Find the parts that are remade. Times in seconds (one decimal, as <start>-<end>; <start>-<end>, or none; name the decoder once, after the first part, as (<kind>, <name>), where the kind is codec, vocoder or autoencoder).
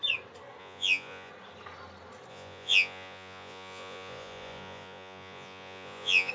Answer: 0.6-1.3 (vocoder, Vocos); 2.3-6.3